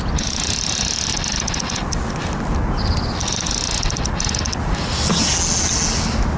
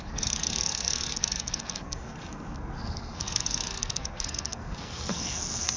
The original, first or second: first